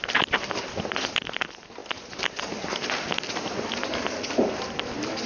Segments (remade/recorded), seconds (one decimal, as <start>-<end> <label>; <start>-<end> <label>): 0.0-5.3 recorded